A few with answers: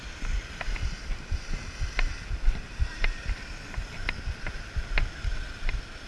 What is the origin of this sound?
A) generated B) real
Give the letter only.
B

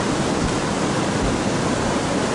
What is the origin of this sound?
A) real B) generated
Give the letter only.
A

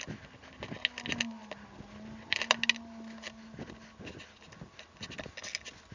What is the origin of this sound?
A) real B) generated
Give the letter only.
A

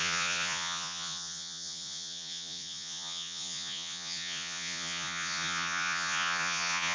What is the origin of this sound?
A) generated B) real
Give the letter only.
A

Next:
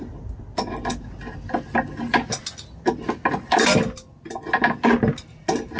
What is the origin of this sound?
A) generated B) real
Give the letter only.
B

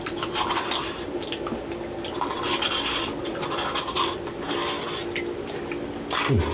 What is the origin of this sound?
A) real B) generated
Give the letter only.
A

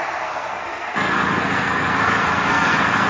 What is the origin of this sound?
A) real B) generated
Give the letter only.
B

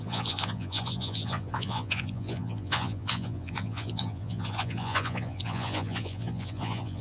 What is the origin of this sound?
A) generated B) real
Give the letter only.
A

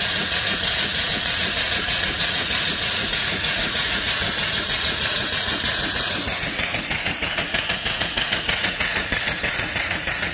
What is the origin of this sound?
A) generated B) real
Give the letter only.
A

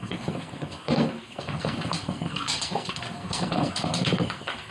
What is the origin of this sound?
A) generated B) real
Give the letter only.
A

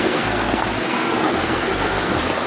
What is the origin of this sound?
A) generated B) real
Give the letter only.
A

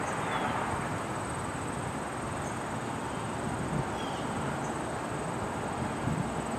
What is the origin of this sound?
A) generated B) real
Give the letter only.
B